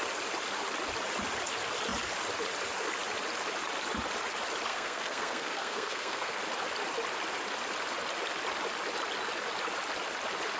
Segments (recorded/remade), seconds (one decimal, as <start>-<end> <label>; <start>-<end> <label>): 0.0-4.7 recorded; 4.7-6.4 remade; 6.4-10.6 recorded